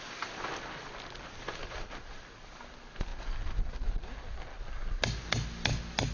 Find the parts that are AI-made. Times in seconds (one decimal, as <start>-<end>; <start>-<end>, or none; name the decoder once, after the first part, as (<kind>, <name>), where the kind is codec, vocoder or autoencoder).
none